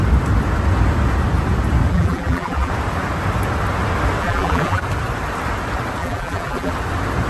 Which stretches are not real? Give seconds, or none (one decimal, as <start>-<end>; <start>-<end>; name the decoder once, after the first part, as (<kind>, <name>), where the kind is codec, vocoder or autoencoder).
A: 1.9-2.7 (vocoder, BigVGAN v2); 4.2-4.8; 6.0-6.7